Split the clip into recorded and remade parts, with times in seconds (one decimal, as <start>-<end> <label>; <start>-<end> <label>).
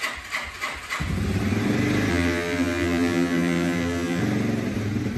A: 0.0-2.1 recorded; 2.1-4.2 remade; 4.2-5.2 recorded